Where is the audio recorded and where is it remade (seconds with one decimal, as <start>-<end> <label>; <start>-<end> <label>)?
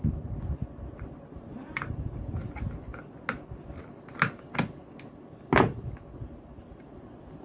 0.0-7.4 recorded